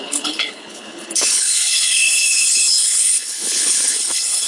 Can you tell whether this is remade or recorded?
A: remade